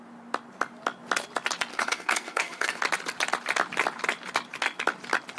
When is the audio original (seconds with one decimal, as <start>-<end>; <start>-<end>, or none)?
0.0-1.7; 2.8-5.4